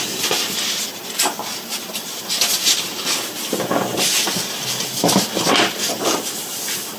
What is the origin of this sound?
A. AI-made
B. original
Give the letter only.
B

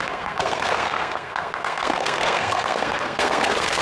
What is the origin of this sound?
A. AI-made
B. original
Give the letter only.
A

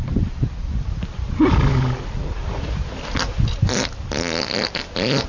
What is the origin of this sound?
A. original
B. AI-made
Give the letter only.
A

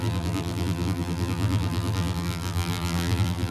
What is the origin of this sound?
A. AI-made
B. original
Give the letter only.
A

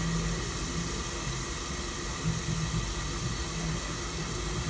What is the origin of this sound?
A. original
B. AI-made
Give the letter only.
A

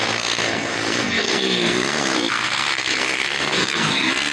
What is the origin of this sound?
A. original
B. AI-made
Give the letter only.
B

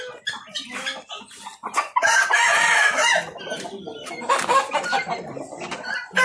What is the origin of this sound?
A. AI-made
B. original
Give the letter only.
A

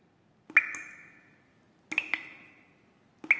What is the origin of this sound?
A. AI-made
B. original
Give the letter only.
B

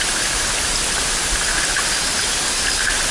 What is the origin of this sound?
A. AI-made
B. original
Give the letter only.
B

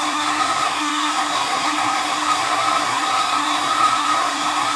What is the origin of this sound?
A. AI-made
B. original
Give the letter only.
A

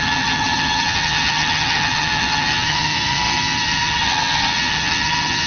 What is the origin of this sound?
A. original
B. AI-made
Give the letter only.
B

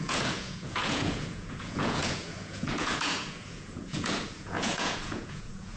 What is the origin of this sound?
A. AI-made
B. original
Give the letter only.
A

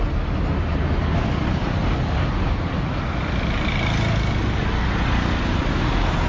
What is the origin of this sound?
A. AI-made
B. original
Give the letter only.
B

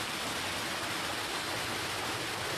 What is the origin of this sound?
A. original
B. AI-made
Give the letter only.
A